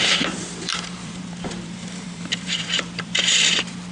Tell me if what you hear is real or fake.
fake